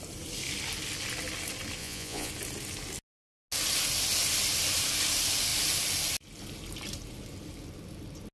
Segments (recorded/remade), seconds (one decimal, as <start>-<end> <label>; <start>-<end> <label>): 0.0-1.8 recorded; 1.8-2.3 remade; 2.3-8.3 recorded